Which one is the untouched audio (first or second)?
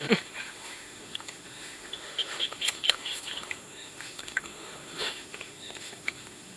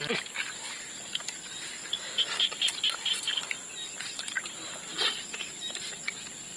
second